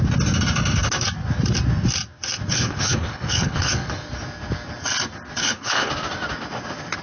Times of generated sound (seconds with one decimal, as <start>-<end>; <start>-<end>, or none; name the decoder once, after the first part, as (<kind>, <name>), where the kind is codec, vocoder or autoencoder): 2.5-3.7 (codec, HILCodec); 5.4-5.9

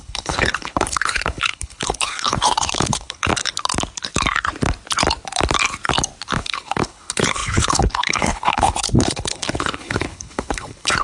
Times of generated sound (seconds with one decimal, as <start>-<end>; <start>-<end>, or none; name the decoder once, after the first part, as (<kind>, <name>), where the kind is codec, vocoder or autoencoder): 0.0-3.3 (codec, HILCodec); 6.3-11.0

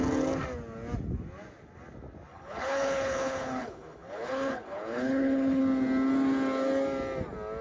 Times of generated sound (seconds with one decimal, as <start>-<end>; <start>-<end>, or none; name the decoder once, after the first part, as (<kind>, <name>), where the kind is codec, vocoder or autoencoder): 2.3-5.6 (codec, HILCodec)

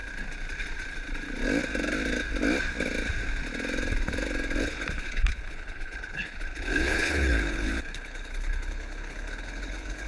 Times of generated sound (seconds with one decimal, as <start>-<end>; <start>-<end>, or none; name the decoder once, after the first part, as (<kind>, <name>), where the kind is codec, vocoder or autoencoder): 4.6-10.1 (codec, HILCodec)

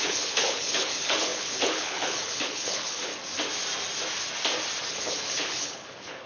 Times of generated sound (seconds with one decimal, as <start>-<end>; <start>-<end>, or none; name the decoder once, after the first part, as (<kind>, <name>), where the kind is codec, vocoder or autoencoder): 0.0-3.1 (codec, HILCodec); 4.9-6.3

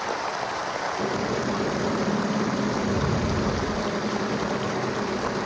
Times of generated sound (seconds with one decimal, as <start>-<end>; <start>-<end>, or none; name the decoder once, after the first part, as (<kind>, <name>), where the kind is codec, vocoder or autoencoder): none

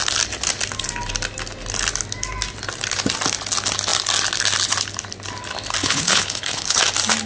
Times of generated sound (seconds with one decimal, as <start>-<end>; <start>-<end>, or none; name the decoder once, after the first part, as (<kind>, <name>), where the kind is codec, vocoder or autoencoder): 5.8-6.8 (codec, HILCodec)

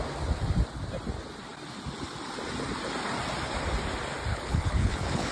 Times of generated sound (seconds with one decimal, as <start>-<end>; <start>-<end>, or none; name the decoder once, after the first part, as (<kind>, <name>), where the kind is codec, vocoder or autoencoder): 4.3-5.3 (codec, HILCodec)